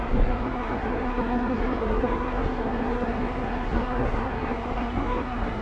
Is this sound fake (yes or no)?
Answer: yes